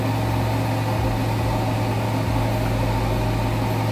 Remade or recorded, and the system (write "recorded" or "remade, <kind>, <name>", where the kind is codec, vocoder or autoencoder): recorded